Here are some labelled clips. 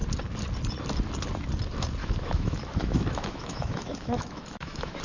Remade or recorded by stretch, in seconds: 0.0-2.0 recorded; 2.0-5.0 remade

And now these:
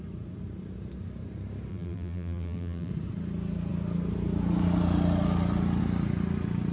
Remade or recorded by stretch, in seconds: 0.0-1.7 recorded; 1.7-2.9 remade; 2.9-6.7 recorded

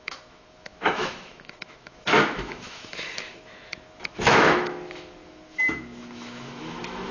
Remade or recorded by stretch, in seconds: 0.0-7.1 remade

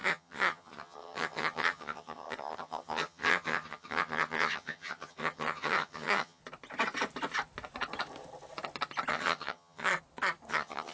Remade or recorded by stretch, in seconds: 0.0-6.4 remade; 6.4-9.1 recorded; 9.1-9.9 remade; 9.9-10.5 recorded; 10.5-10.9 remade

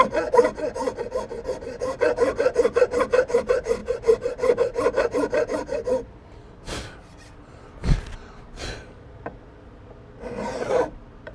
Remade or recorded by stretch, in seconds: 0.0-3.8 remade; 3.8-7.1 recorded; 7.1-7.8 remade; 7.8-10.7 recorded; 10.7-11.3 remade

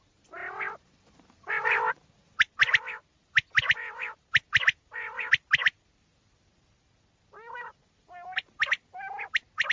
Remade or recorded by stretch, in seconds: 0.0-9.7 recorded

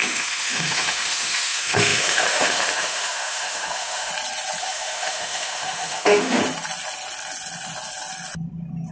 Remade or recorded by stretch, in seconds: 0.0-4.1 remade; 4.1-4.6 recorded; 4.6-6.4 remade; 6.4-8.9 recorded